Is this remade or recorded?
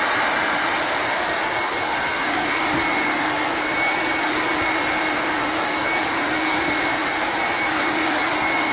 recorded